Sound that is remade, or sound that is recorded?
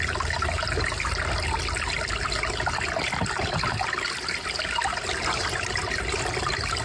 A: recorded